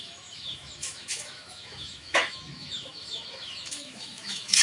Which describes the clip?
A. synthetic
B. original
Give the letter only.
A